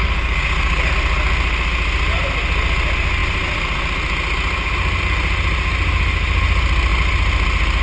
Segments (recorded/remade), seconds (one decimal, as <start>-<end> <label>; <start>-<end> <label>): 0.0-0.9 remade; 0.9-7.8 recorded